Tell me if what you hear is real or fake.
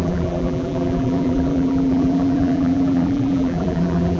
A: fake